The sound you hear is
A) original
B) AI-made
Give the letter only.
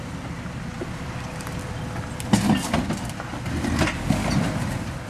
A